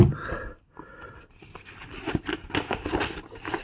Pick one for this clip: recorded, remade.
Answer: recorded